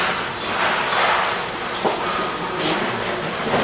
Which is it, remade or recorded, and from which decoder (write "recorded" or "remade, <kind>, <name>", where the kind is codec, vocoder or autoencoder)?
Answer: recorded